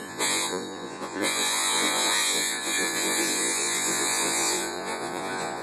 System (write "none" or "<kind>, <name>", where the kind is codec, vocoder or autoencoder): vocoder, Vocos